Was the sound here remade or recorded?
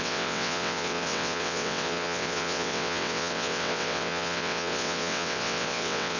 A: remade